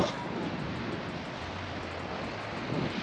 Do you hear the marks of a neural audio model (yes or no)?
no